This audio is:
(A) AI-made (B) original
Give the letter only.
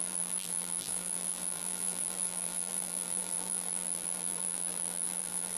A